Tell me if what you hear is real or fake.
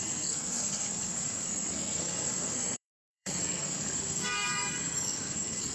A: fake